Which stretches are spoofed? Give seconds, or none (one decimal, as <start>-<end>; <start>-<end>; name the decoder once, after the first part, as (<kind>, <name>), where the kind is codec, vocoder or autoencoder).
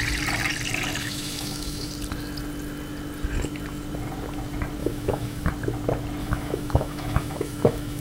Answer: 1.0-1.9 (autoencoder, DAC-VAE); 4.8-5.5; 6.2-8.0